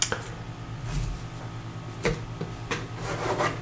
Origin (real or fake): real